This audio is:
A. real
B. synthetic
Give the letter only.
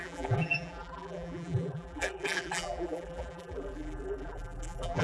B